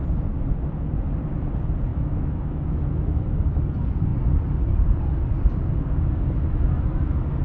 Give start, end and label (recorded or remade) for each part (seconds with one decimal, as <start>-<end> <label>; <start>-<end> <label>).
0.0-1.9 recorded; 1.9-3.6 remade; 3.6-7.4 recorded